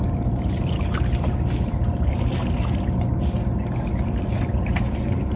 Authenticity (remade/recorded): remade